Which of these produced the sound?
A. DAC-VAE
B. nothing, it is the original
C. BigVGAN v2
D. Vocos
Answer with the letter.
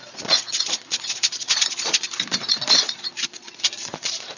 D